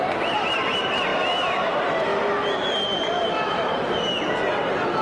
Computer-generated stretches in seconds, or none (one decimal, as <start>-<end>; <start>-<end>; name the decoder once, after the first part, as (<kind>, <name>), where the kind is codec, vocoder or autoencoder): 0.0-1.1 (vocoder, BigVGAN v2); 1.7-2.1; 3.2-5.0